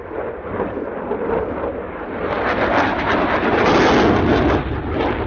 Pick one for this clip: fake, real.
real